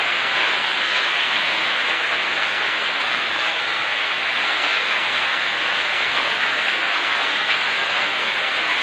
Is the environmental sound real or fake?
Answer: fake